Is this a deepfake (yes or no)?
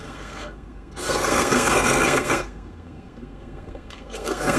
yes